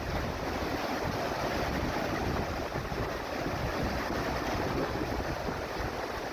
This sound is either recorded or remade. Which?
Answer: recorded